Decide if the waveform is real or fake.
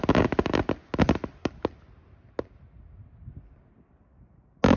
real